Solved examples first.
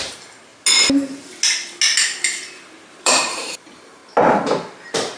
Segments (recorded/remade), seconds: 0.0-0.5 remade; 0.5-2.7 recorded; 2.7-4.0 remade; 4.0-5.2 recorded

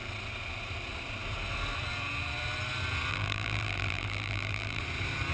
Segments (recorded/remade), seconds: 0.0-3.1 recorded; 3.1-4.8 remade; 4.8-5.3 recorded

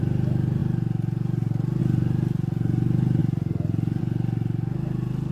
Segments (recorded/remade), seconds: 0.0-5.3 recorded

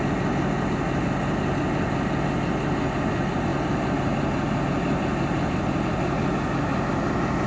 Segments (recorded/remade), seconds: 0.0-7.5 recorded

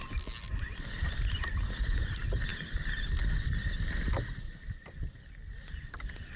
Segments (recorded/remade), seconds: 0.0-6.4 recorded

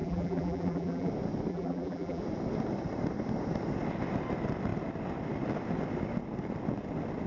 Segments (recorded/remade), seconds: 0.0-1.1 remade; 1.1-1.5 recorded; 1.5-2.2 remade; 2.2-7.3 recorded

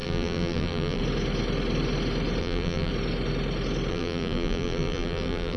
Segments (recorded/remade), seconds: 0.0-1.0 remade; 1.0-2.4 recorded; 2.4-2.9 remade; 2.9-3.9 recorded; 3.9-5.6 remade

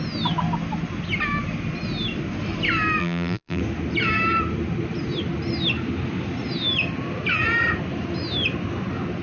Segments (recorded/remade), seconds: 0.0-3.0 recorded; 3.0-3.6 remade; 3.6-9.2 recorded